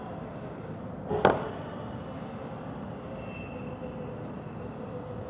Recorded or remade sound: recorded